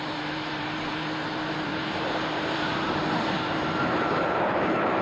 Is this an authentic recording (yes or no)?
no